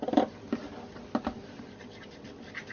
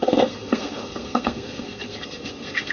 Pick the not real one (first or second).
second